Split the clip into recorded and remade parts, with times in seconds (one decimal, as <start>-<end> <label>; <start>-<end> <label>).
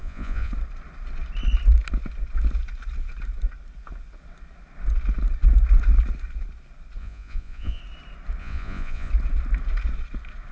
0.0-0.5 remade; 0.5-7.0 recorded; 7.0-7.8 remade; 7.8-8.4 recorded; 8.4-9.1 remade; 9.1-10.5 recorded